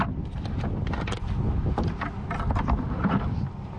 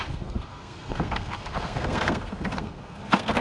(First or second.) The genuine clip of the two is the first